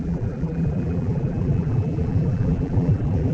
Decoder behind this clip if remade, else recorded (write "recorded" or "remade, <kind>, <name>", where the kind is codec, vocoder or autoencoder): remade, vocoder, BigVGAN v2